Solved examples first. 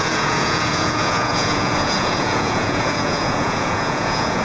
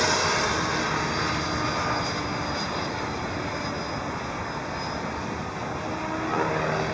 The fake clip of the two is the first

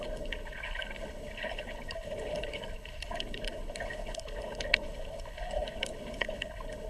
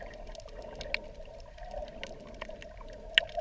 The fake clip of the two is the first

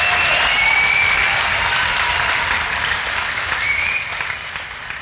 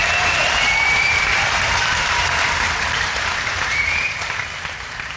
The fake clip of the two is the second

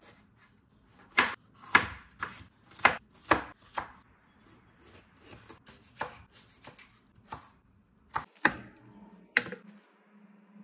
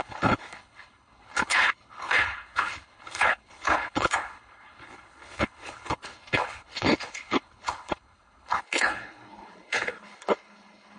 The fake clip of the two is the second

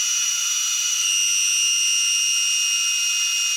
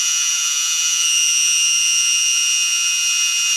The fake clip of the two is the second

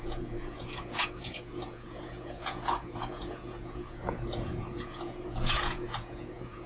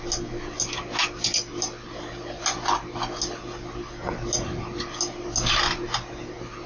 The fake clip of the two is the first